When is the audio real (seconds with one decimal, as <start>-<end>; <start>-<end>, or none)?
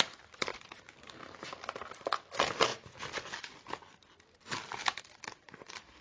2.7-4.8